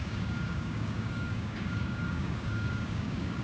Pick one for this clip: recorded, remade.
remade